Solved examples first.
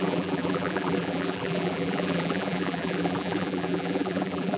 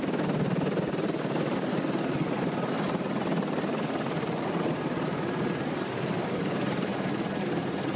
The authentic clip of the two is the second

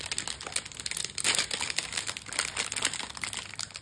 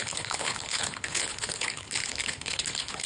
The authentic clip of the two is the first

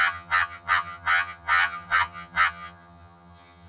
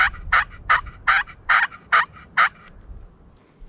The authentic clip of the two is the second